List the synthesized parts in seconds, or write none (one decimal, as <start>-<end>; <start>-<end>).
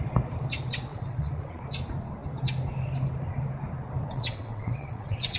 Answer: 0.9-1.6; 4.1-5.4